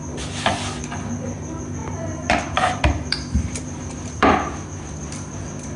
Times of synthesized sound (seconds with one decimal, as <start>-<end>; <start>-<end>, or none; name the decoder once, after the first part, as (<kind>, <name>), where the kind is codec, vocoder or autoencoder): 1.8-4.3 (vocoder, BigVGAN v2)